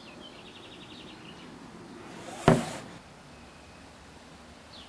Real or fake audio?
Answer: real